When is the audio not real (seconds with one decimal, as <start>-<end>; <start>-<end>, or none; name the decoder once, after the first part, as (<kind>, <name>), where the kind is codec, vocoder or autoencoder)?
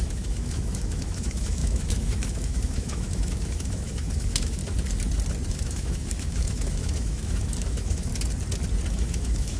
0.0-4.6 (autoencoder, DAC-VAE); 5.5-8.1; 8.9-9.6